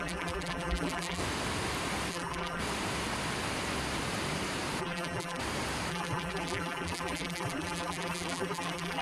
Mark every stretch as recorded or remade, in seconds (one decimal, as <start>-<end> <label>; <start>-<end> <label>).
0.0-1.2 remade; 1.2-2.1 recorded; 2.1-2.6 remade; 2.6-4.8 recorded; 4.8-5.4 remade; 5.4-5.9 recorded; 5.9-9.0 remade